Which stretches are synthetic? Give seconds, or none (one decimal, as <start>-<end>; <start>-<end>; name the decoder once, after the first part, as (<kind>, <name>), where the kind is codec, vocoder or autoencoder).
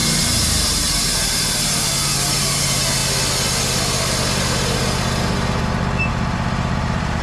0.0-3.0 (vocoder, BigVGAN v2); 6.1-7.2